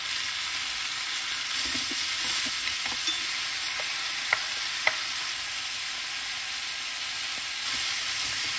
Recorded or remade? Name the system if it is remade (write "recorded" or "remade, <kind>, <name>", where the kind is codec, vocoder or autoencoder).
recorded